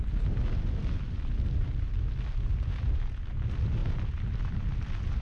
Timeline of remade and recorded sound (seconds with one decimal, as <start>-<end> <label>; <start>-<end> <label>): 0.0-5.2 recorded